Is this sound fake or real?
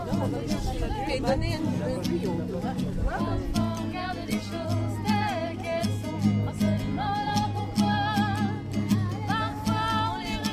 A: real